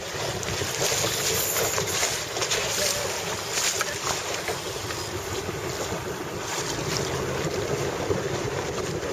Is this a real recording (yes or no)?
yes